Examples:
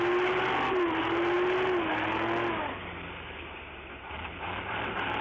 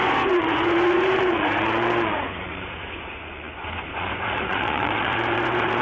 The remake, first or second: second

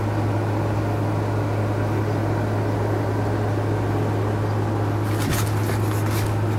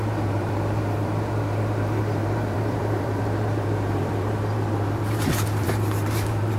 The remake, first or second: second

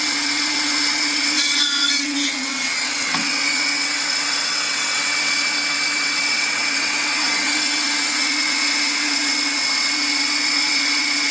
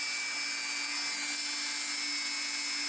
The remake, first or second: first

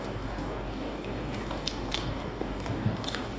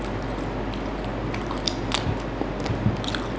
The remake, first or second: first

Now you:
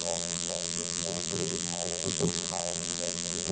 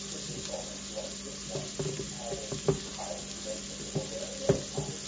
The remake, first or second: first